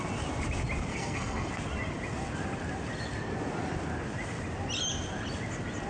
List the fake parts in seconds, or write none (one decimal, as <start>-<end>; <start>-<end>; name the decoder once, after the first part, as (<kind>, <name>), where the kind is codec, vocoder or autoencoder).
0.9-1.5 (codec, SNAC)